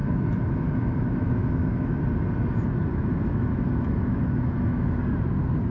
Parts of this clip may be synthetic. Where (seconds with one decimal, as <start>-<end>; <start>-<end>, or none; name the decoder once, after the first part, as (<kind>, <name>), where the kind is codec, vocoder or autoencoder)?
0.0-2.0 (autoencoder, DAC-VAE); 2.9-5.0